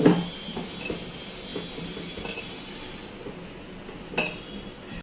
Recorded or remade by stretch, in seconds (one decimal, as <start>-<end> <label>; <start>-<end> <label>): 0.0-5.0 recorded